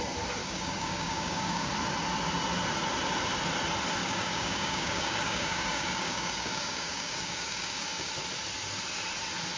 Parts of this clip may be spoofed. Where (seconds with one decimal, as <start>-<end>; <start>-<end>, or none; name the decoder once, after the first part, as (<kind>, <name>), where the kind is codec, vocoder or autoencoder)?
0.4-1.7 (codec, DAC); 4.0-8.1